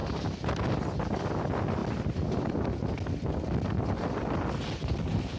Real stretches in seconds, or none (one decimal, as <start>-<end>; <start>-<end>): 0.0-5.4